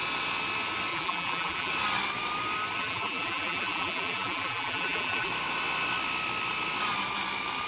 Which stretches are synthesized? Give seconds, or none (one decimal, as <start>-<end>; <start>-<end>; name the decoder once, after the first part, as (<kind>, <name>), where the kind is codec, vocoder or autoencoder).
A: 0.9-1.7 (vocoder, BigVGAN v2); 2.8-5.3